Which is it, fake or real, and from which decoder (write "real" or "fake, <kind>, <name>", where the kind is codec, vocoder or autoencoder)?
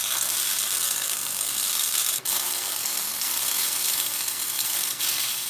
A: fake, codec, SNAC